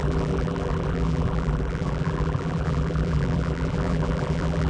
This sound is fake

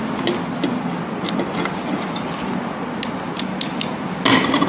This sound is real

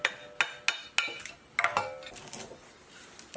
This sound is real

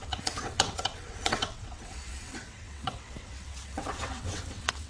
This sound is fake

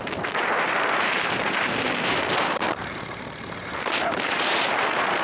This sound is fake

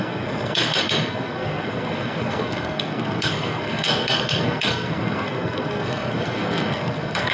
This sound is fake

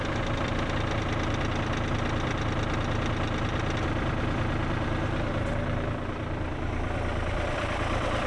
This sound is fake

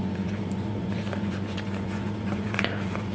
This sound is fake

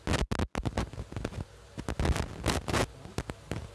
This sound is real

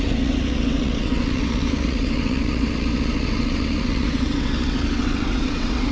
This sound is fake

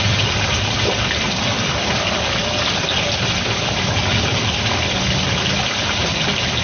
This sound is real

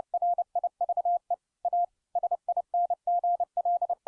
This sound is real